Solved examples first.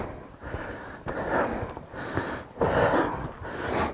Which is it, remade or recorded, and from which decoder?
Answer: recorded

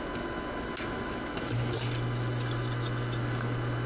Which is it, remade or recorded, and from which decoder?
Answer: recorded